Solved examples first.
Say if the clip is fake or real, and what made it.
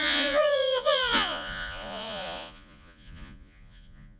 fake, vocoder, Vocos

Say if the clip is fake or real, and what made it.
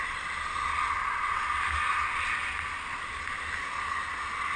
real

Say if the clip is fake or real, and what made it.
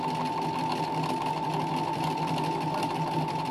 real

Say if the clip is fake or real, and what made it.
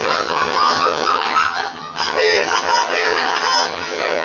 fake, vocoder, HiFi-GAN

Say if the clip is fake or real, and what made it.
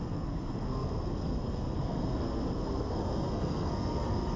fake, codec, SNAC